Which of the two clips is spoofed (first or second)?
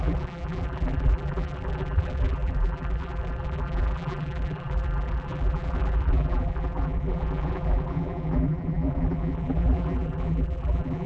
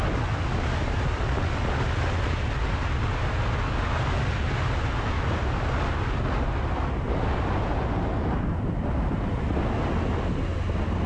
first